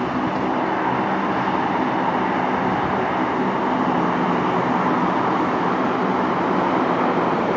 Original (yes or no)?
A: yes